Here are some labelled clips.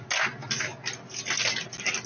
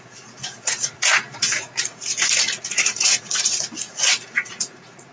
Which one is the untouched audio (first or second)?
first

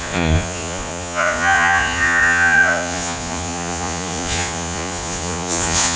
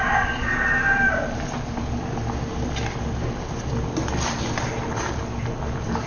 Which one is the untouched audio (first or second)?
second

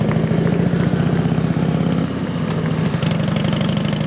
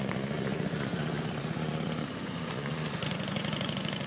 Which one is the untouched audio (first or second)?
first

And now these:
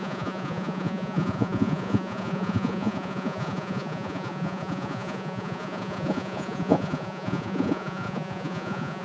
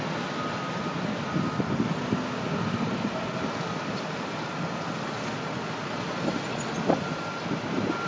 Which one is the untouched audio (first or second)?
second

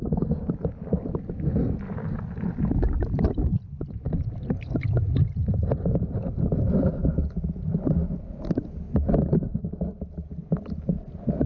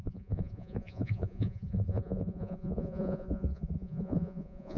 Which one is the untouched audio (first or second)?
first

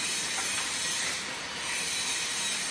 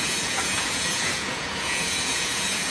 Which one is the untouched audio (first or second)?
first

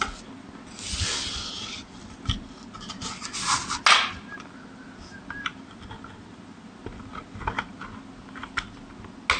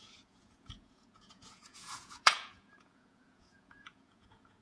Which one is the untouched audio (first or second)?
first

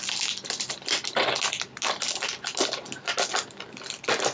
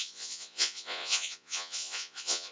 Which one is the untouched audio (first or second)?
first